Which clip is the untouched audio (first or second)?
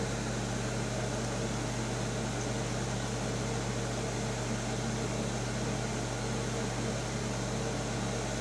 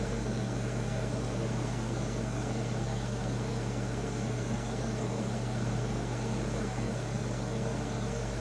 first